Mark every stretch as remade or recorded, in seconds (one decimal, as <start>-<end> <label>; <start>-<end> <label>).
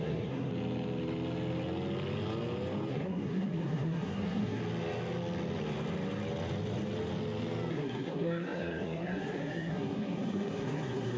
0.0-0.5 remade; 0.5-2.9 recorded; 2.9-4.6 remade; 4.6-7.7 recorded; 7.7-11.2 remade